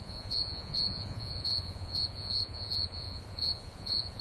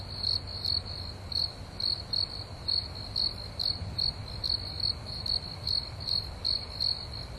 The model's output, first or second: first